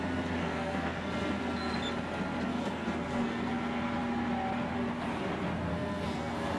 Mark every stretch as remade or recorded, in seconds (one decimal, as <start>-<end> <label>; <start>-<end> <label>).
0.0-0.4 recorded; 0.4-1.7 remade; 1.7-2.5 recorded; 2.5-3.5 remade; 3.5-5.7 recorded; 5.7-6.6 remade